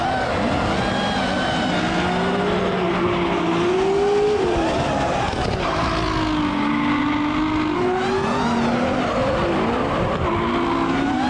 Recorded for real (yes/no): yes